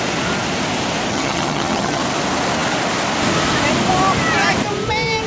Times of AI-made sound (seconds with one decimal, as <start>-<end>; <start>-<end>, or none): 1.1-2.0